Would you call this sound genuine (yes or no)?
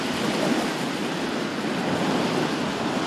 yes